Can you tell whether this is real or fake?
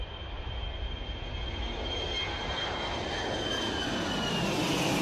real